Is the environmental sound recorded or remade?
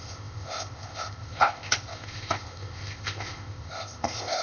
remade